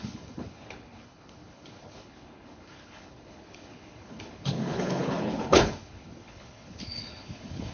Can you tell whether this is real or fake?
fake